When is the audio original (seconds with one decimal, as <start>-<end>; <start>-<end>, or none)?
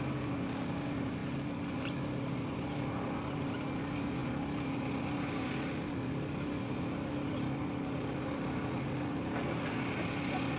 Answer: 0.0-10.6